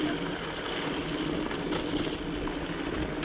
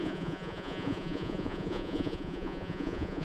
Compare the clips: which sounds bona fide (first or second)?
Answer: first